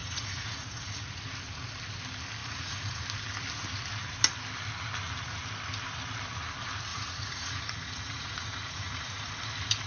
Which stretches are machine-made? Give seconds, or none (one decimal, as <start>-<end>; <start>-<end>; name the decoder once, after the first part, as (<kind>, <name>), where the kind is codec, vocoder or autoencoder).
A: 0.0-1.0 (vocoder, Vocos); 2.4-3.0; 6.9-9.3